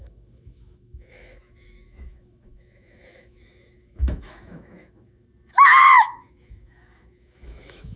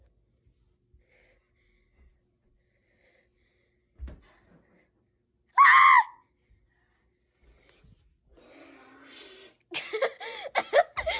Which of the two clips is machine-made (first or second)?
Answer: first